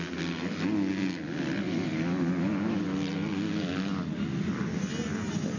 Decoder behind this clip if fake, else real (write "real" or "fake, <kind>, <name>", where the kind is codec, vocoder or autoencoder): real